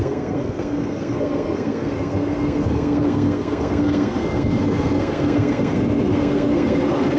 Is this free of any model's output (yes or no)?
no